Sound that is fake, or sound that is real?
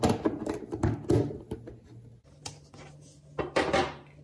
real